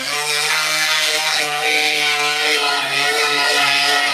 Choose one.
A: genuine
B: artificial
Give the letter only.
B